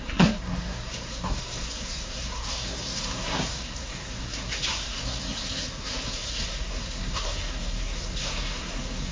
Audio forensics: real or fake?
fake